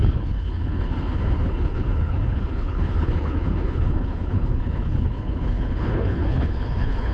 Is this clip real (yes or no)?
no